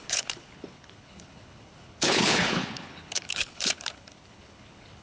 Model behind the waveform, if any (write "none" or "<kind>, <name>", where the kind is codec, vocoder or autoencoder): codec, HILCodec